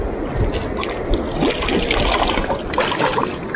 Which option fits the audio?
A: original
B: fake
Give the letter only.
A